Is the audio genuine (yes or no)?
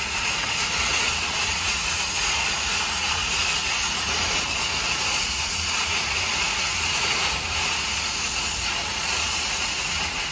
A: no